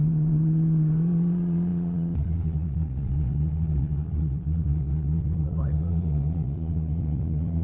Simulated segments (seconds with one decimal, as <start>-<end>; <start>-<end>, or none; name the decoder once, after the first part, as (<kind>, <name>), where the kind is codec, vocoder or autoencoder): 0.0-7.6 (vocoder, Vocos)